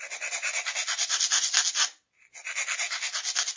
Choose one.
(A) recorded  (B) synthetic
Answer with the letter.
A